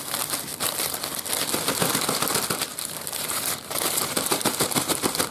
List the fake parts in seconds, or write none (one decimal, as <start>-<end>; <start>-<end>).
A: 2.7-5.3